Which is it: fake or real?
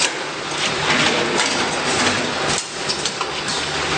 real